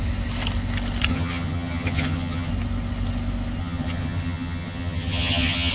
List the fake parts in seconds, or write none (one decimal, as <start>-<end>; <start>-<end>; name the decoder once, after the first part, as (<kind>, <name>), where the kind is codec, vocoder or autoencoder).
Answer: 1.1-2.5 (vocoder, HiFi-GAN); 3.6-5.7